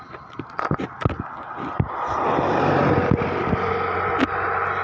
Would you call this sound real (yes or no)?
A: yes